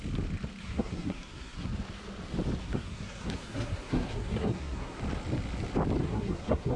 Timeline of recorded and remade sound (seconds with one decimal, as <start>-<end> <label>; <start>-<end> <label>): 0.0-0.6 recorded; 0.6-1.7 remade; 1.7-2.6 recorded; 2.6-5.0 remade; 5.0-6.0 recorded; 6.0-6.8 remade